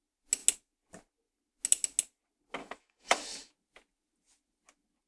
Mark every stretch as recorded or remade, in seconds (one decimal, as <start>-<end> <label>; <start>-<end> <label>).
0.0-2.6 recorded; 2.6-3.5 remade; 3.5-5.1 recorded